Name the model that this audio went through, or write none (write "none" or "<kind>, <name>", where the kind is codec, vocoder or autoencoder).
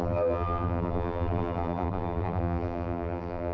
vocoder, BigVGAN v2